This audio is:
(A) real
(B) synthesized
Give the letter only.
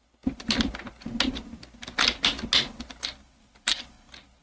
A